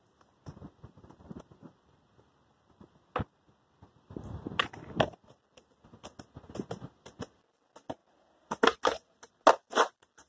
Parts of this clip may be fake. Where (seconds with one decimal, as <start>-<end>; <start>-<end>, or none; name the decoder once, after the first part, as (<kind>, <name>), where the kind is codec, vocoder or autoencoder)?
none